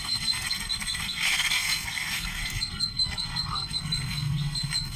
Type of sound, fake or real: fake